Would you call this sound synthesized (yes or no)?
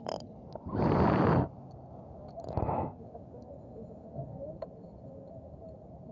no